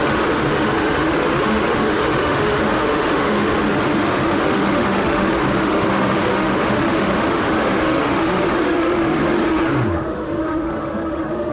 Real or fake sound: fake